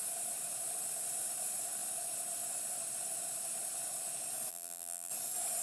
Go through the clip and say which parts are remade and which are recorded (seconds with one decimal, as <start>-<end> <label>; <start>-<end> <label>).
0.0-4.5 recorded; 4.5-5.1 remade; 5.1-5.6 recorded